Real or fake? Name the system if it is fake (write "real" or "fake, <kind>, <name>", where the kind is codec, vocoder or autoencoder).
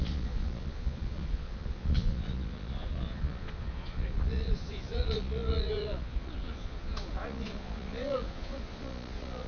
fake, vocoder, Vocos